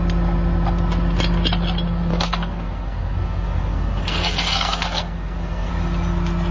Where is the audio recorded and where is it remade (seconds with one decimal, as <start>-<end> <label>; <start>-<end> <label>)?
0.0-2.1 recorded; 2.1-5.7 remade; 5.7-6.5 recorded